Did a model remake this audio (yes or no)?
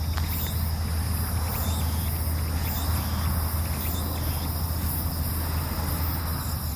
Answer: no